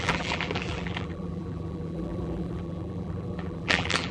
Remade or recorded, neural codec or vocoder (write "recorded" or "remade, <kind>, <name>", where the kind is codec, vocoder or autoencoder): remade, vocoder, BigVGAN v2